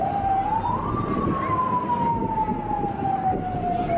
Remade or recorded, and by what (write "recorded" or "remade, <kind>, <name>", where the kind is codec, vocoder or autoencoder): recorded